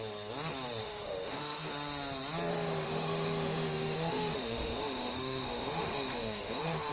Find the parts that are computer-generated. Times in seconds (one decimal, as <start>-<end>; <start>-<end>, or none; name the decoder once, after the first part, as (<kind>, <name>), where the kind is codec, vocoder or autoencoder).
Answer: 0.8-1.7 (autoencoder, DAC-VAE); 2.5-6.9